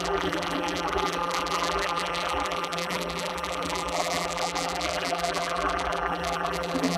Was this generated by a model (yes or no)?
yes